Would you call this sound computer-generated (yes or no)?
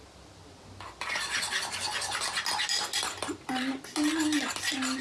no